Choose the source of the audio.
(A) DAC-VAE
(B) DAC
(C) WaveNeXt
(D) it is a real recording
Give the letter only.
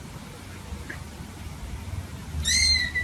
D